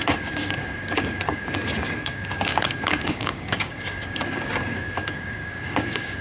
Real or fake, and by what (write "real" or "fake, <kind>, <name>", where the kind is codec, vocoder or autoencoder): fake, codec, DAC